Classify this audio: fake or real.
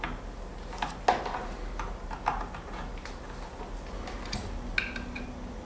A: real